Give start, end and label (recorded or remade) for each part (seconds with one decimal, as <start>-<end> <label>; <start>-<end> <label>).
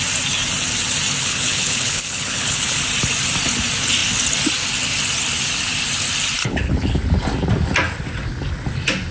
0.0-1.2 recorded; 1.2-2.8 remade; 2.8-6.4 recorded; 6.4-7.0 remade; 7.0-9.1 recorded